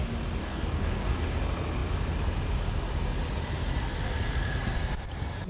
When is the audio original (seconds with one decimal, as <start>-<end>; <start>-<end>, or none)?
0.0-0.4; 1.4-5.5